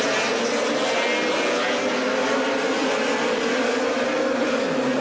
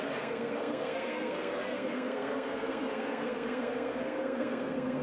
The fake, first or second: second